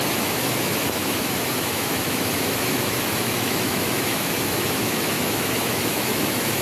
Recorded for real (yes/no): no